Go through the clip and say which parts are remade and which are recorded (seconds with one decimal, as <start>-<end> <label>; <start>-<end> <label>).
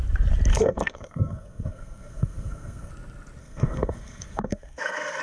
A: 0.0-0.5 recorded; 0.5-2.9 remade; 2.9-3.4 recorded; 3.4-5.2 remade